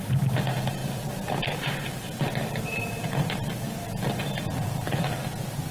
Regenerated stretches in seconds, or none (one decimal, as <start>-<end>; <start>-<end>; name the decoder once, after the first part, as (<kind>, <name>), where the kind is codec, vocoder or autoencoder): none